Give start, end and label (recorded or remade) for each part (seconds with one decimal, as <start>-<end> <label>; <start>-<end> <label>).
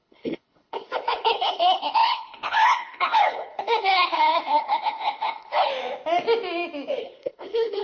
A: 0.0-5.7 remade; 5.7-7.0 recorded; 7.0-7.8 remade